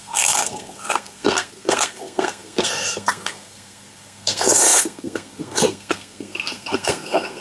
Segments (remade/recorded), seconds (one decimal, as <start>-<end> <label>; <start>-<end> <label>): 0.0-7.4 remade